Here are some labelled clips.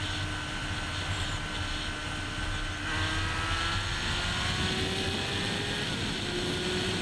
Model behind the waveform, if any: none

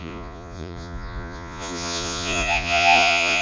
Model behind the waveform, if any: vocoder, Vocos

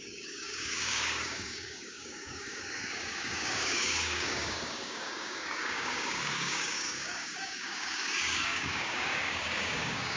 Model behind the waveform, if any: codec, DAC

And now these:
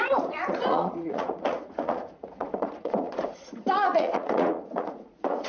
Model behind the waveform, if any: vocoder, Vocos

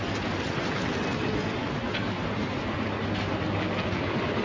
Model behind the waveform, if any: none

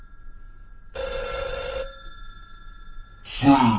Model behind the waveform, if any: none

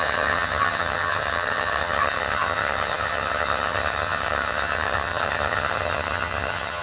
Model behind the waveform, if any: vocoder, HiFi-GAN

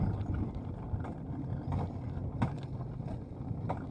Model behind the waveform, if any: none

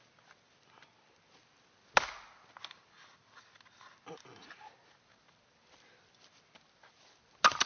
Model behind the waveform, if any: none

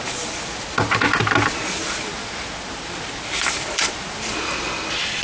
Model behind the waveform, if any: none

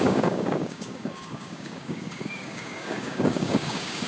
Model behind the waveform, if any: codec, DAC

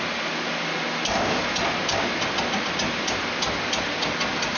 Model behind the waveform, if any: none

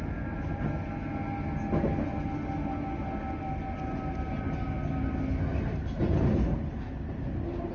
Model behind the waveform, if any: none